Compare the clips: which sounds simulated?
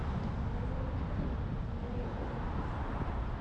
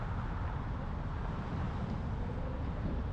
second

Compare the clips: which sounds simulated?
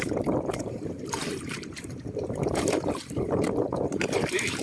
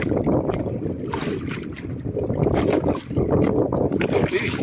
first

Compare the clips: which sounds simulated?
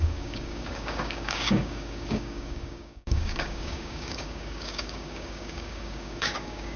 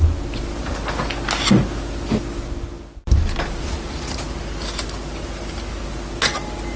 first